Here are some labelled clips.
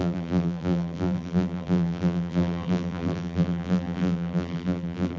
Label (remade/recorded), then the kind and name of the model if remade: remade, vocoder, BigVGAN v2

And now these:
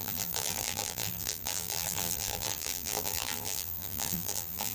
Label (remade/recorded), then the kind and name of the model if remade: remade, vocoder, BigVGAN v2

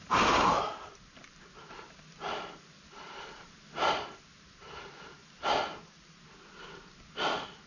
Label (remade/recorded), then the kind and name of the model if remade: recorded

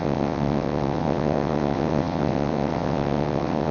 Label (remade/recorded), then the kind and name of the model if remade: remade, vocoder, WaveNeXt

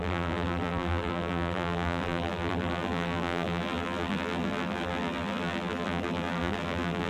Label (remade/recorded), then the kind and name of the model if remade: remade, vocoder, BigVGAN v2